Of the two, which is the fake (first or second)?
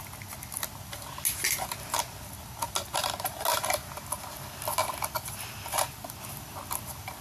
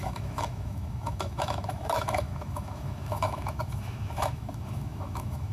second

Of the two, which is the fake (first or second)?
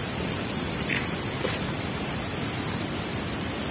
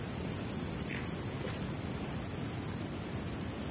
first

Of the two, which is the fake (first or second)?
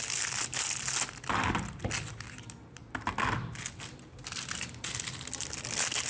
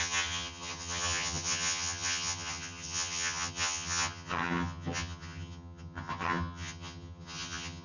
second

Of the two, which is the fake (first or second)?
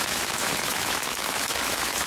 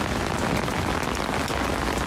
first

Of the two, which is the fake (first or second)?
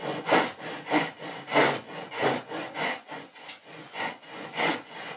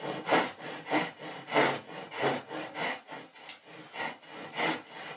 first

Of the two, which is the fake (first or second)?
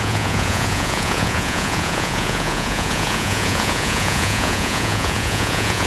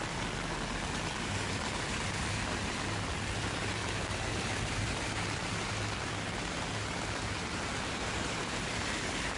first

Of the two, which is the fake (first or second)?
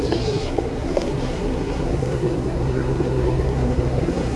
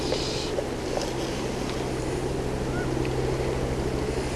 first